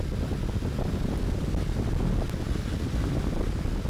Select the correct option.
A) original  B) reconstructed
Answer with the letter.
A